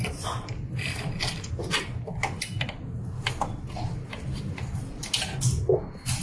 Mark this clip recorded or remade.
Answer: recorded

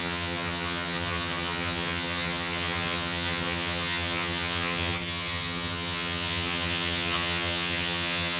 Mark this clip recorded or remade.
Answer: remade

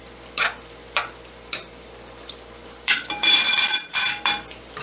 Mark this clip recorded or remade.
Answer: remade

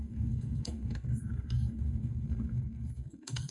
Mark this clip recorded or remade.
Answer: remade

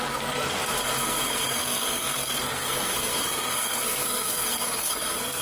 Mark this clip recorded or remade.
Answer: remade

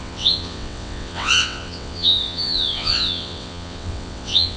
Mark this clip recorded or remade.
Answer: remade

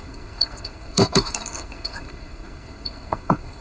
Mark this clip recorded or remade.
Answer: remade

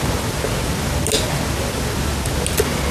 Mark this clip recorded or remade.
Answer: recorded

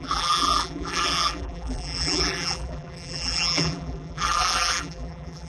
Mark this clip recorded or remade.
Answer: remade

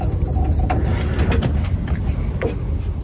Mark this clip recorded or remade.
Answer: recorded